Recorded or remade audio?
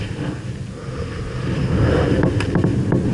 recorded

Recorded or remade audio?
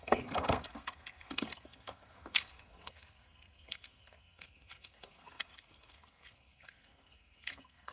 remade